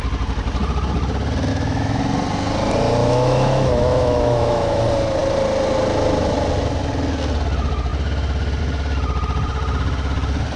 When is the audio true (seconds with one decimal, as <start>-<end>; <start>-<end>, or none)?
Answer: 0.0-1.5; 2.0-3.0; 4.8-10.6